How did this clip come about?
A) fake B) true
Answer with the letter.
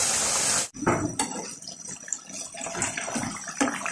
B